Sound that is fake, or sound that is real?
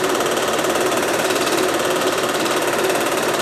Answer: real